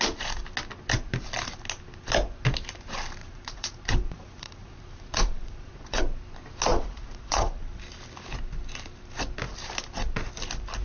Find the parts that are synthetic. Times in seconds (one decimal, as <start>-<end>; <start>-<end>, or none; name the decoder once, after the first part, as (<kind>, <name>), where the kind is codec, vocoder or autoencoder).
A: 3.2-6.0 (vocoder, Vocos); 6.7-7.8